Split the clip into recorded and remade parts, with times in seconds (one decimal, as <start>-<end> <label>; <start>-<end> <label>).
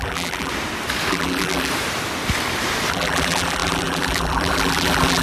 0.0-0.5 remade; 0.5-1.1 recorded; 1.1-1.7 remade; 1.7-2.9 recorded; 2.9-5.2 remade